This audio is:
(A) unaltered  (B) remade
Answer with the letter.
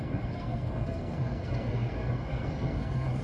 B